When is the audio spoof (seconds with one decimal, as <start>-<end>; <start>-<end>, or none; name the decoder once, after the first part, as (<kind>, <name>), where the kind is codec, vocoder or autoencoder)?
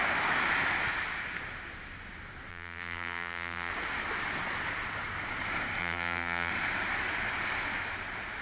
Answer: 2.5-3.7 (vocoder, BigVGAN v2); 5.8-6.5